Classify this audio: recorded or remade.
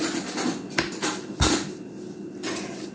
recorded